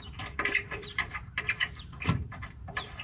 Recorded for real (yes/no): no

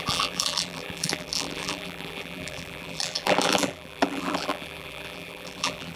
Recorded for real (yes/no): no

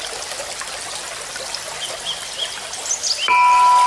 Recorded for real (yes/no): yes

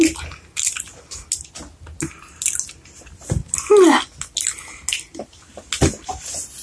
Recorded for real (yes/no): yes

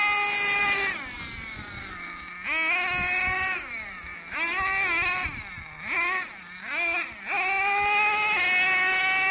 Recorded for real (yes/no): yes